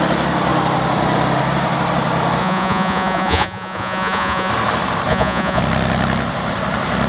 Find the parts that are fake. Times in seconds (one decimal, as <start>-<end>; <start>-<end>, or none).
2.4-4.5; 5.1-5.6